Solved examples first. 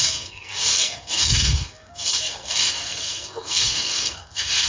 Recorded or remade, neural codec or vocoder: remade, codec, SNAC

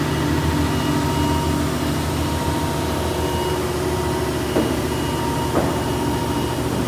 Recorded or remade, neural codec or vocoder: recorded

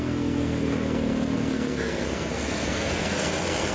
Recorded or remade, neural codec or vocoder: remade, codec, SNAC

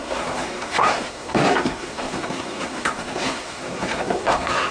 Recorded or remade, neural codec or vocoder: remade, codec, SNAC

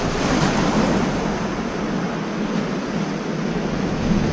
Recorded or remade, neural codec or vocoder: recorded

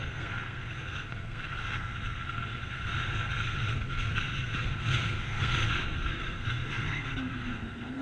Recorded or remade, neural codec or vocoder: remade, codec, SNAC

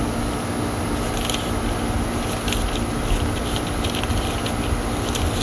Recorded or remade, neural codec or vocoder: recorded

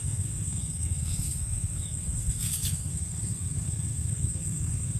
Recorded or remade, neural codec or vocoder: remade, codec, SNAC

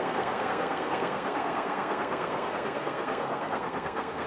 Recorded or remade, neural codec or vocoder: remade, codec, SNAC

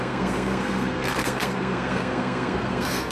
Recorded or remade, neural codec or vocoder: remade, codec, SNAC